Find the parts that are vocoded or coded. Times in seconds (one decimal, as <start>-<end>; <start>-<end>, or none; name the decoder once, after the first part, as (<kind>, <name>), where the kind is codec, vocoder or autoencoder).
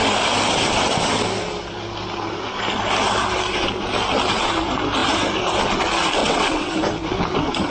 6.2-6.7 (vocoder, WaveNeXt)